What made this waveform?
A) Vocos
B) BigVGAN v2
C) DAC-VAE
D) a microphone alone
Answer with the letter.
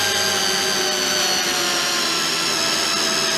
D